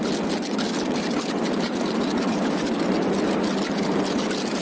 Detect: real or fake real